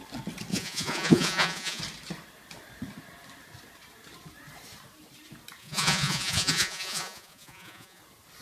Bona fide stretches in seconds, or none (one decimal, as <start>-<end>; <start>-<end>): 0.0-0.5; 1.8-5.6; 8.0-8.4